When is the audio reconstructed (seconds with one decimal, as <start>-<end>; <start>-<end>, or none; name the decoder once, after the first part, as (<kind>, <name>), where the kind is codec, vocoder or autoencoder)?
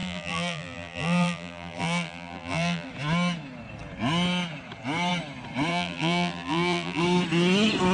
0.0-2.9 (vocoder, BigVGAN v2); 5.7-7.0